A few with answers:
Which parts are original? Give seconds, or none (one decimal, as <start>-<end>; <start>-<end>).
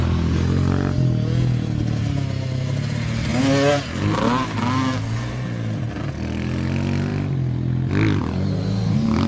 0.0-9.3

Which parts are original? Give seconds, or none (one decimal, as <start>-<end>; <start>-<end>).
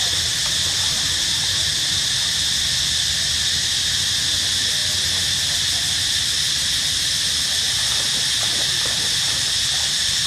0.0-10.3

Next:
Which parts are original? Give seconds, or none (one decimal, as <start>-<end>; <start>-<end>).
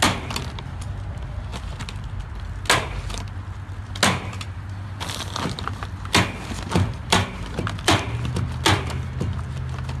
0.0-1.5; 2.2-10.0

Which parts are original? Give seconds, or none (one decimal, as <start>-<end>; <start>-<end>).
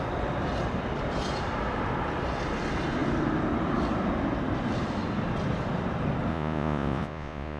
0.0-6.3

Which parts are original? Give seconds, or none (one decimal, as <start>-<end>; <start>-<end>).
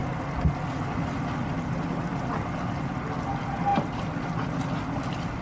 0.0-5.4